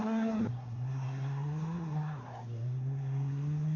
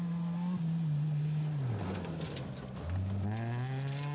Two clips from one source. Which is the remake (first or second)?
first